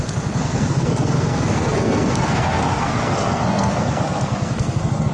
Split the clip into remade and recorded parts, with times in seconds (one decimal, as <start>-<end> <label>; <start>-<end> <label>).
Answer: 0.0-5.1 remade